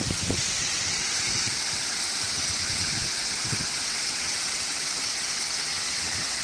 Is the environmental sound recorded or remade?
remade